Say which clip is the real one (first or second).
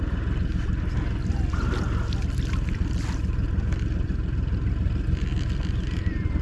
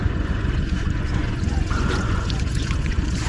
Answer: first